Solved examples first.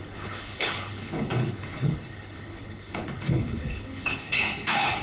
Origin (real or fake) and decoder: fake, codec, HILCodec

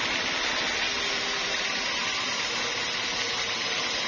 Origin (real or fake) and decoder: real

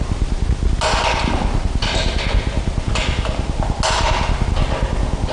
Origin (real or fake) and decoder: real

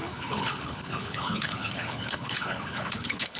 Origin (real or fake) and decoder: fake, codec, HILCodec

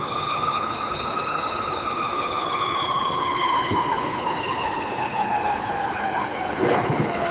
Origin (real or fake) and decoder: fake, codec, HILCodec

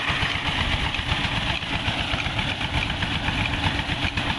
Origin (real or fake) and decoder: real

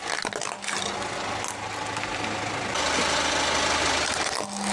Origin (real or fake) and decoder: real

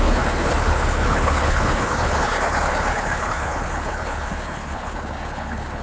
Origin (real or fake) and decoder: fake, codec, HILCodec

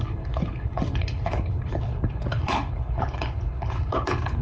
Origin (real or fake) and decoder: fake, codec, HILCodec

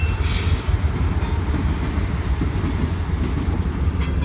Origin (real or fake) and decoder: real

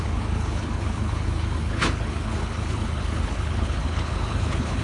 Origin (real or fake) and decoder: fake, codec, HILCodec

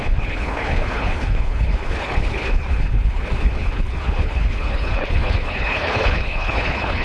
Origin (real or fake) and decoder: fake, codec, HILCodec